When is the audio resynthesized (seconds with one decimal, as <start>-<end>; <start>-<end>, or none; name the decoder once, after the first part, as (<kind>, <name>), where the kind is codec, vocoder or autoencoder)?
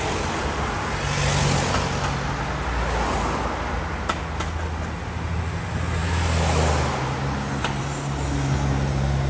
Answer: none